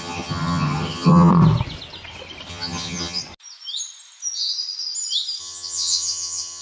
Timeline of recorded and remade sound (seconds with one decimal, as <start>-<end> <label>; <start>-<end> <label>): 0.0-1.3 remade; 1.3-2.5 recorded; 2.5-3.2 remade; 3.2-5.4 recorded; 5.4-6.6 remade